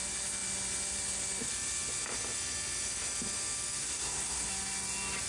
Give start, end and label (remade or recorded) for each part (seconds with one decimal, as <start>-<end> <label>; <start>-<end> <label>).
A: 0.0-3.8 recorded; 3.8-4.5 remade; 4.5-5.3 recorded